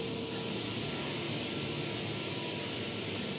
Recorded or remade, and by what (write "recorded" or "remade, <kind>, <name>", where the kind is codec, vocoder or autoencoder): recorded